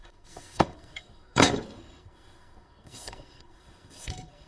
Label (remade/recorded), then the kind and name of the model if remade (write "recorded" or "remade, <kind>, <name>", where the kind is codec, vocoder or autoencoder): remade, codec, SNAC